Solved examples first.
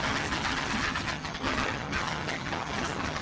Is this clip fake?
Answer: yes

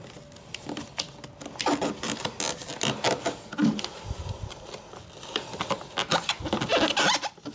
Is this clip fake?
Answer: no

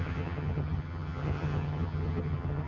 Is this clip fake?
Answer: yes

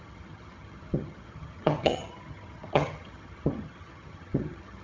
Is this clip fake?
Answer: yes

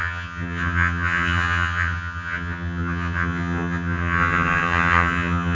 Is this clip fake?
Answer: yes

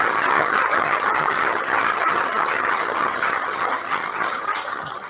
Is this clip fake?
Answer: yes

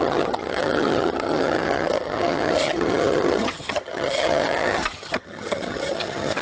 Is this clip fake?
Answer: yes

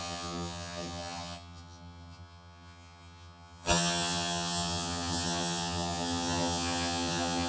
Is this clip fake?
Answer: yes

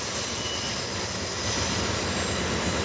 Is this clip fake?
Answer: no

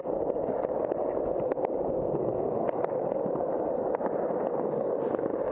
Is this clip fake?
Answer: no